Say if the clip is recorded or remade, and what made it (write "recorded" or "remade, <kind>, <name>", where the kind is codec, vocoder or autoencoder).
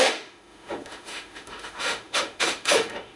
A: remade, autoencoder, DAC-VAE